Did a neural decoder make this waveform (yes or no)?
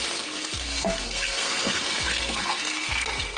yes